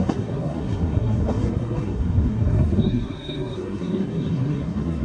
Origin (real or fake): fake